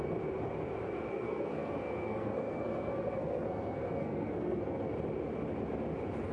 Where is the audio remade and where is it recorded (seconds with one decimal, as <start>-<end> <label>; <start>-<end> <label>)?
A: 0.0-1.1 recorded; 1.1-4.9 remade; 4.9-6.3 recorded